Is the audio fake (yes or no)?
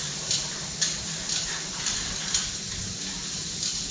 no